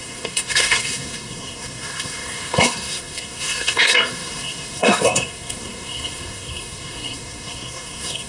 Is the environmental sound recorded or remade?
remade